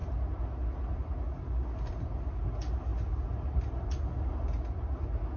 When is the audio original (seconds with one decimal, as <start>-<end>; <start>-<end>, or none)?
0.0-5.4